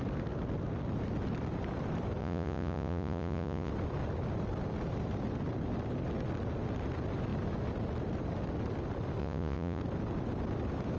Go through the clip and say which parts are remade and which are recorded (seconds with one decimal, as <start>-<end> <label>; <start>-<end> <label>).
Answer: 0.0-2.2 recorded; 2.2-3.7 remade; 3.7-9.2 recorded; 9.2-9.8 remade; 9.8-11.0 recorded